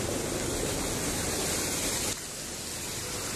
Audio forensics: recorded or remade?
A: recorded